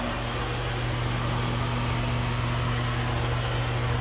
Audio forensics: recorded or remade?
recorded